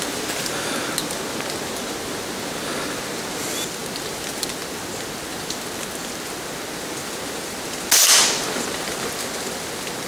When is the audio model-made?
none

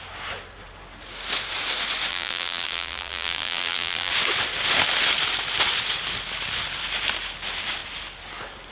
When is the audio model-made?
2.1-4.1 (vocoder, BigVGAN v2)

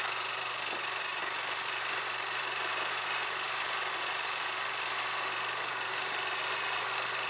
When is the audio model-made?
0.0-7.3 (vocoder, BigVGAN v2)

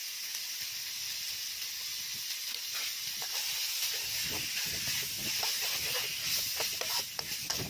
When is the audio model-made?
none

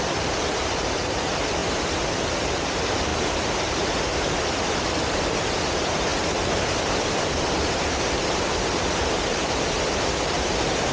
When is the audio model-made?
0.0-1.6 (vocoder, BigVGAN v2); 2.2-10.9